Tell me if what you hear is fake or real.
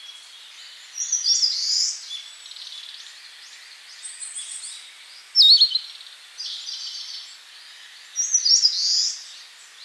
real